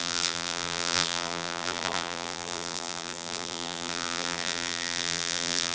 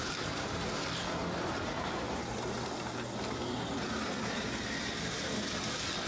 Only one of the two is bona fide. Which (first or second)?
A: second